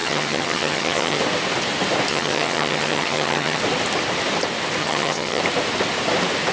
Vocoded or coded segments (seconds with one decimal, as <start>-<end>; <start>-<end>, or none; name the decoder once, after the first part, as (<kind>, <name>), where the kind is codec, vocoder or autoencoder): 0.0-1.2 (vocoder, HiFi-GAN); 2.1-3.6; 4.8-5.4